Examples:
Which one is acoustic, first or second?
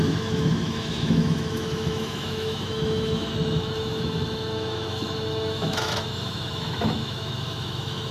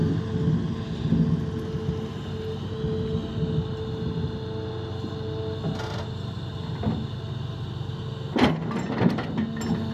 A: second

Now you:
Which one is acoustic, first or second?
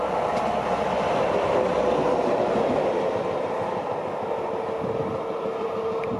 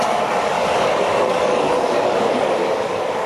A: first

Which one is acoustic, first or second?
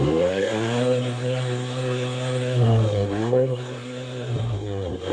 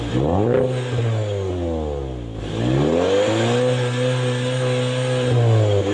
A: second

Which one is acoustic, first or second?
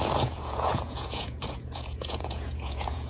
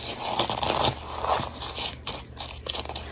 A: second